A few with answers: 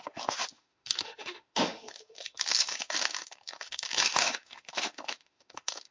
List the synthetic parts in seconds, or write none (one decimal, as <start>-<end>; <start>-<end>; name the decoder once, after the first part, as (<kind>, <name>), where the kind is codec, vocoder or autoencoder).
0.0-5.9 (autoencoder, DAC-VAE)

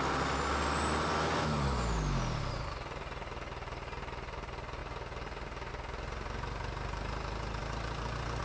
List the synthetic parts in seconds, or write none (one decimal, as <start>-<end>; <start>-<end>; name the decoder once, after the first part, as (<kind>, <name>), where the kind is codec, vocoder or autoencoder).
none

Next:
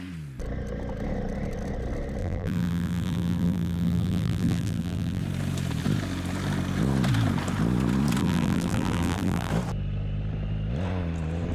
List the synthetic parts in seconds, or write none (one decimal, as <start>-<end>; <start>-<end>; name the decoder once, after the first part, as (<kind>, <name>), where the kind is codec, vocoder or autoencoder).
2.2-5.2 (vocoder, BigVGAN v2); 8.2-9.5

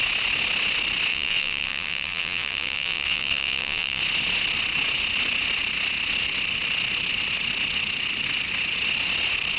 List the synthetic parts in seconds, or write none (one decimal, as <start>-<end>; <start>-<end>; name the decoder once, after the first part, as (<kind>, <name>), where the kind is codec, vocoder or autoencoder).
1.1-4.0 (vocoder, WaveNeXt)